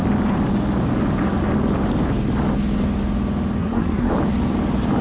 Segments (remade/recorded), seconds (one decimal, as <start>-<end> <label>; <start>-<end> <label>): 0.0-3.6 recorded; 3.6-4.1 remade; 4.1-5.0 recorded